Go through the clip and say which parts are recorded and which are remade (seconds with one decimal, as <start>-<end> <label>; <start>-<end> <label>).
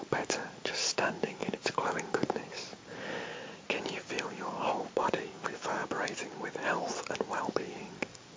0.0-3.3 remade; 3.3-4.2 recorded; 4.2-5.8 remade; 5.8-7.4 recorded; 7.4-8.4 remade